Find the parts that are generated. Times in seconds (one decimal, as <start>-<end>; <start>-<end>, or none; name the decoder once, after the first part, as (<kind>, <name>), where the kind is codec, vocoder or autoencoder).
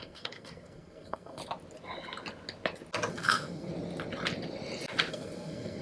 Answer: 0.0-1.4 (codec, SNAC); 3.1-3.7; 5.1-5.8